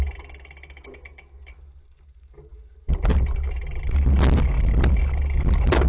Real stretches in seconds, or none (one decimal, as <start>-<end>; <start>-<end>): 0.0-5.9